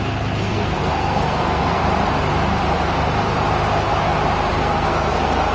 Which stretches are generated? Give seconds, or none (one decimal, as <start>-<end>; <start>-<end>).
0.0-1.8; 4.5-5.5